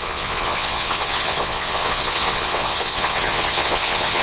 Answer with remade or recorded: remade